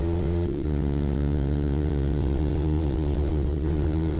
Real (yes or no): no